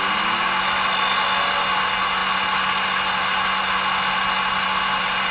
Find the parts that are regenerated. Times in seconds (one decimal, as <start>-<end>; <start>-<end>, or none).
none